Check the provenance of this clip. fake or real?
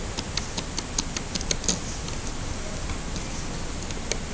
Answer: real